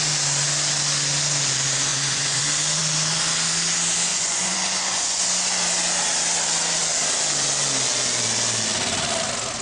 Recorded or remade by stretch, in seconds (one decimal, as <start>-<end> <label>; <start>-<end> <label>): 0.0-1.9 recorded; 1.9-2.4 remade; 2.4-4.1 recorded; 4.1-5.2 remade; 5.2-9.6 recorded